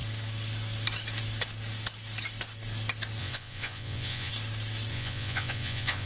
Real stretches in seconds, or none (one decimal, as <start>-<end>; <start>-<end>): 0.0-3.2; 4.3-4.9